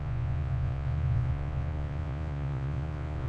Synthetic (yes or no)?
yes